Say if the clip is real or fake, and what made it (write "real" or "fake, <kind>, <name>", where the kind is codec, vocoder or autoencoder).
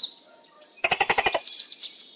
real